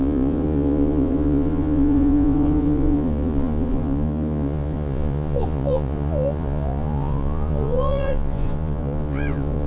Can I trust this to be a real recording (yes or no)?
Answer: no